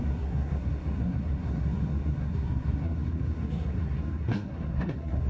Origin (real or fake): fake